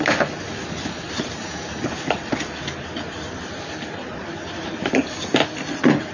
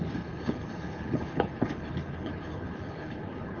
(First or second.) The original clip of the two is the first